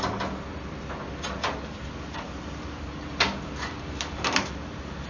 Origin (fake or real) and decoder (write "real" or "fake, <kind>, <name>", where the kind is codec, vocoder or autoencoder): real